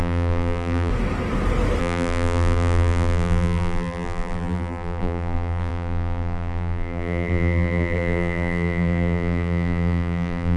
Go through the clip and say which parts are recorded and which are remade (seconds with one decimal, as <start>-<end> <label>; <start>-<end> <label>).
0.0-0.9 remade; 0.9-1.8 recorded; 1.8-10.6 remade

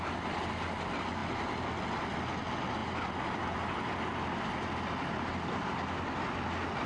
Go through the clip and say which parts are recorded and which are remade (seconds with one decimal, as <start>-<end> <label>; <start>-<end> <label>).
0.0-6.9 recorded

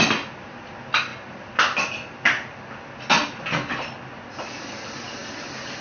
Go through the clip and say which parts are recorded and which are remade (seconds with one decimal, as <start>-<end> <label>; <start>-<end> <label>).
0.0-5.8 recorded